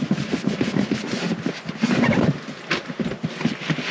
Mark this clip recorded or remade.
recorded